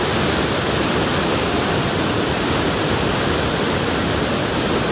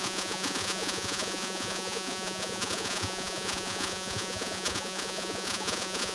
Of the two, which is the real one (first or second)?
first